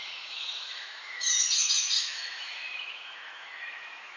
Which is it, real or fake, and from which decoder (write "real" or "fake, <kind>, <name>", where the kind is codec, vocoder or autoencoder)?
fake, autoencoder, DAC-VAE